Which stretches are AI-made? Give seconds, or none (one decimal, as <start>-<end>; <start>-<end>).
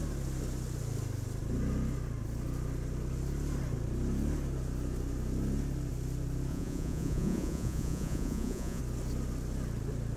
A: 6.5-8.8